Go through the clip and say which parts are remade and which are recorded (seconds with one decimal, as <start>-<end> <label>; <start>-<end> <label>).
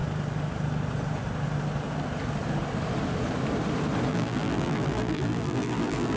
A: 0.0-4.1 recorded; 4.1-6.2 remade